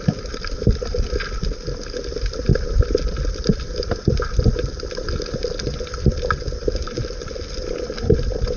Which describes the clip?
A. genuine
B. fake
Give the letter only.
A